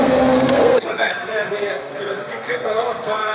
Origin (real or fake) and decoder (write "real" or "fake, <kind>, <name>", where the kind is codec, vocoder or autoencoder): fake, codec, SNAC